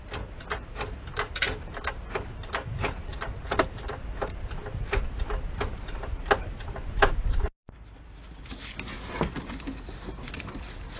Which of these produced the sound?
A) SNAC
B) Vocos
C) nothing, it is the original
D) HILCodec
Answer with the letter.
C